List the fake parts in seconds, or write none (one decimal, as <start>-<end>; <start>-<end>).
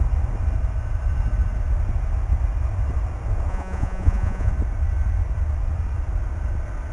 3.5-4.5